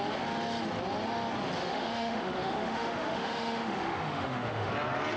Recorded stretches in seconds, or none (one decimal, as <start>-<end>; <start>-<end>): 0.0-1.6; 4.7-5.2